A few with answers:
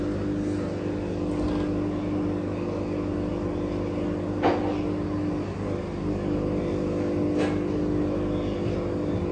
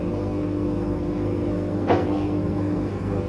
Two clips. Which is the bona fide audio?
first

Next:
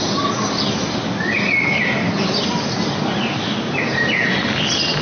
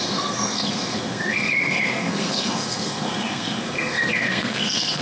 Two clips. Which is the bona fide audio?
first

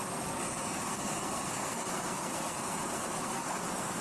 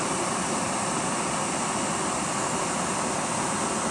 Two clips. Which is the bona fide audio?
second